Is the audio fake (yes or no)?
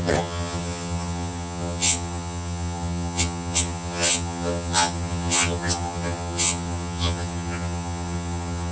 yes